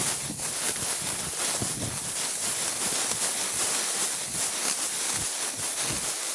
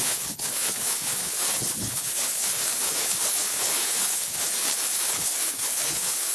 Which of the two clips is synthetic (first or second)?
second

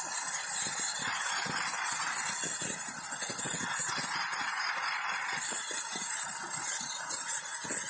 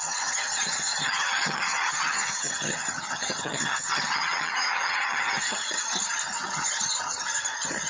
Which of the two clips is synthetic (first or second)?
second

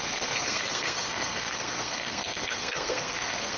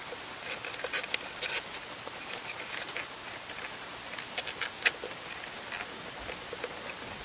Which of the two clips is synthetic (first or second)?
first